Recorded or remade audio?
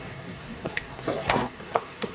remade